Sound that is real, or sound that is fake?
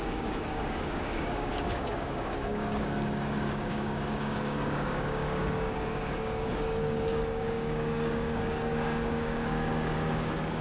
fake